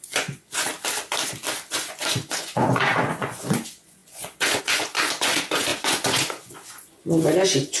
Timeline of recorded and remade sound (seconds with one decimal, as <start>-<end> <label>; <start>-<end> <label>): 0.0-0.7 remade; 0.7-1.7 recorded; 1.7-7.8 remade

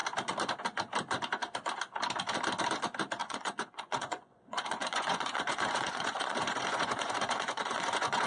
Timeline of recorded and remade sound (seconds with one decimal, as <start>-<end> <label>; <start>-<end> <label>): 0.0-3.2 recorded; 3.2-8.3 remade